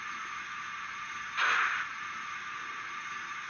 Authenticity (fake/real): real